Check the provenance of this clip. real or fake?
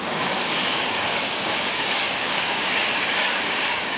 fake